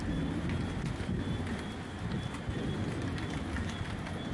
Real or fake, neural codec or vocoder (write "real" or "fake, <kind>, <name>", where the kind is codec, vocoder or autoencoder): real